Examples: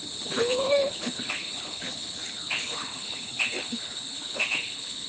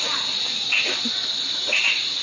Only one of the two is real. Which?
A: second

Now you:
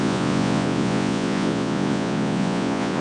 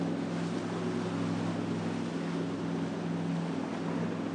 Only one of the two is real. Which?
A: second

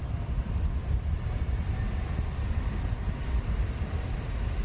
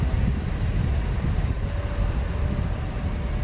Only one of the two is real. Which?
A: second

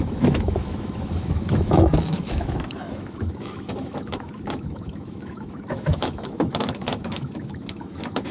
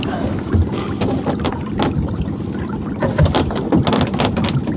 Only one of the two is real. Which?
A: second